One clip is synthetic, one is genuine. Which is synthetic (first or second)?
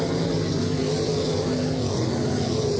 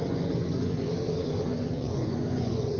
second